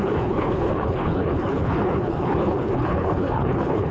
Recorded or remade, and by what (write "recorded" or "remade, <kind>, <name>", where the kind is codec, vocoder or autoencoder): remade, codec, HILCodec